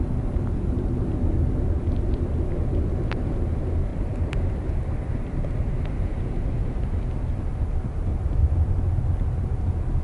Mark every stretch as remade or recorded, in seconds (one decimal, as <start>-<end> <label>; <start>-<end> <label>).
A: 0.0-3.9 recorded; 3.9-5.8 remade; 5.8-8.1 recorded; 8.1-8.9 remade; 8.9-10.0 recorded